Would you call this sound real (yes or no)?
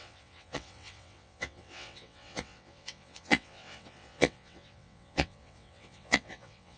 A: no